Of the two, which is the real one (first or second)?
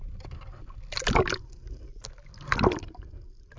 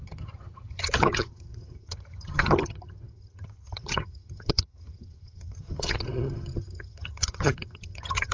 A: first